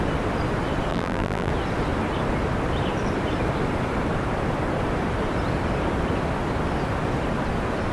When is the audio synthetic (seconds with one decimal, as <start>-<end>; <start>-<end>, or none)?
0.9-1.5